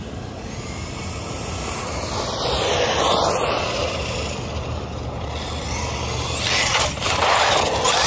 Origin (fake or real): real